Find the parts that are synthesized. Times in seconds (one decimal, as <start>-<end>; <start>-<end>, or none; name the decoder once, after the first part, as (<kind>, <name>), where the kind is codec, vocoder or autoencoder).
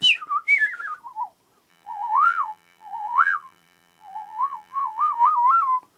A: 1.7-5.3 (vocoder, BigVGAN v2)